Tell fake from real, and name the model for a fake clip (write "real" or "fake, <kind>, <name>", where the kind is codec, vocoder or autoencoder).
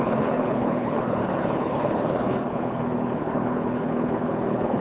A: fake, codec, HILCodec